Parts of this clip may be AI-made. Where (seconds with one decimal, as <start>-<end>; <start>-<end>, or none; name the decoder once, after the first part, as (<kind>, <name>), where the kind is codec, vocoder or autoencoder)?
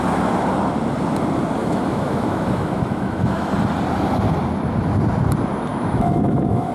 1.6-3.5 (autoencoder, DAC-VAE); 5.7-6.7